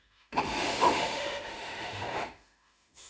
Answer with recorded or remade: remade